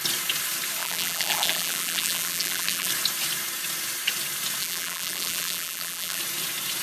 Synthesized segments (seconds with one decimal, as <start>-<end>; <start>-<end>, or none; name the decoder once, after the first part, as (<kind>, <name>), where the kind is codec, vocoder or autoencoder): 0.8-2.9 (vocoder, BigVGAN v2); 4.6-6.2